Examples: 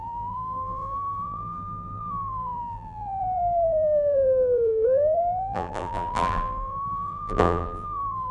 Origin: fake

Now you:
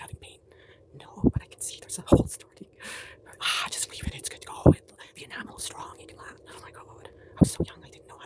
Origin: fake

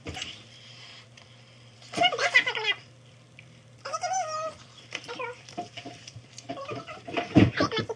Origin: fake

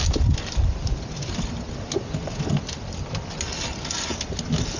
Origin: real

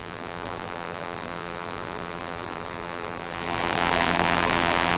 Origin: fake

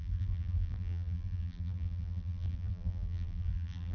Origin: fake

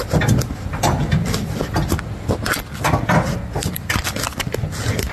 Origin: real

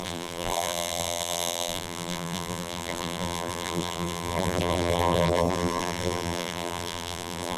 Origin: fake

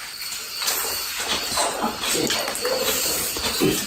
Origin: fake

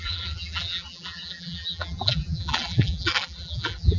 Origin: fake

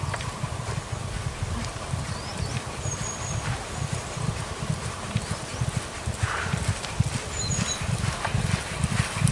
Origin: fake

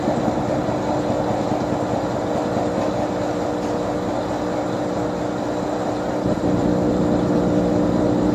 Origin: fake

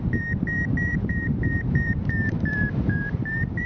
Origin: fake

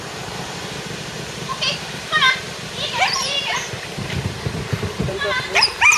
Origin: fake